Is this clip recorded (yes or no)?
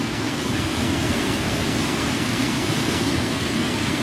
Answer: no